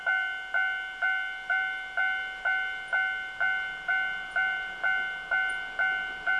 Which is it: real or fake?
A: real